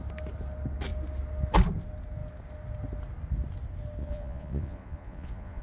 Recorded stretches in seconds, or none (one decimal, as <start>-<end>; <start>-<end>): 0.0-4.0